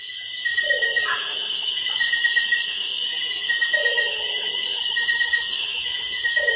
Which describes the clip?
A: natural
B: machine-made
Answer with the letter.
B